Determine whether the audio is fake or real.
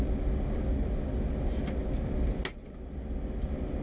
real